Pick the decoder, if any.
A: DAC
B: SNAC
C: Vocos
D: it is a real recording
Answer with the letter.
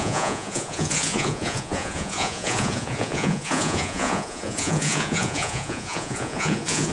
C